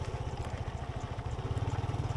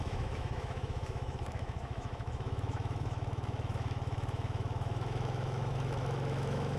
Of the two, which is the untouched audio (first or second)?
first